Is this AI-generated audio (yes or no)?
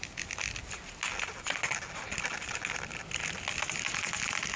no